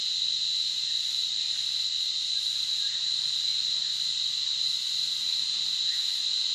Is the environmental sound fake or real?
real